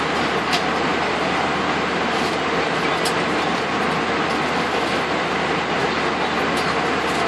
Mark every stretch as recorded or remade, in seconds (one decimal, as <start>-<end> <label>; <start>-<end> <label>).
0.0-7.3 recorded